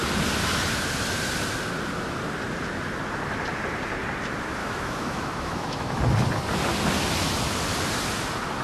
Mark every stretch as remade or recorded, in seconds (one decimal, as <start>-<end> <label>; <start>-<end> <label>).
0.0-4.6 recorded; 4.6-5.9 remade; 5.9-8.6 recorded